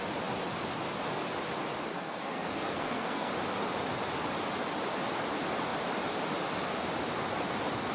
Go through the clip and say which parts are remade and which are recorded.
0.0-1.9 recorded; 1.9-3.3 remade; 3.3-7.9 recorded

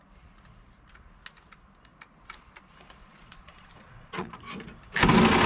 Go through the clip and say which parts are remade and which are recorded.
0.0-3.0 recorded; 3.0-4.3 remade; 4.3-5.5 recorded

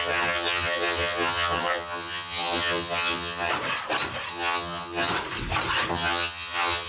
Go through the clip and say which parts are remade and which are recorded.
0.0-3.5 remade; 3.5-4.3 recorded; 4.3-5.1 remade; 5.1-5.9 recorded; 5.9-6.9 remade

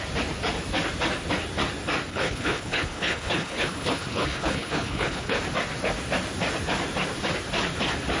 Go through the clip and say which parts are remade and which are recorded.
0.0-2.1 recorded; 2.1-5.4 remade; 5.4-8.2 recorded

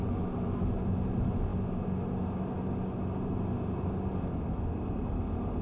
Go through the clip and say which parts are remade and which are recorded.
0.0-5.6 recorded